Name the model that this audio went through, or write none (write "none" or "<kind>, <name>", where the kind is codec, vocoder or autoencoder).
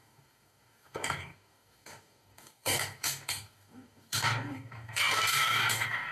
codec, DAC